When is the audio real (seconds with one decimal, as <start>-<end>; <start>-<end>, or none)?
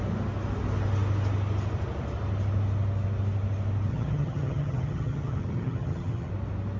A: 0.0-3.9; 6.3-6.8